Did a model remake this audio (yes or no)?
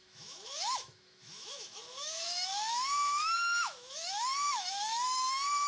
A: yes